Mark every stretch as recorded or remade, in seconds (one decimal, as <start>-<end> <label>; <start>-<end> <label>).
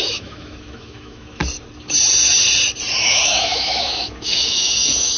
0.0-1.4 remade; 1.4-2.9 recorded; 2.9-5.2 remade